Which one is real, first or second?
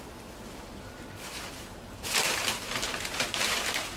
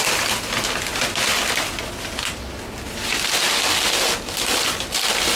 second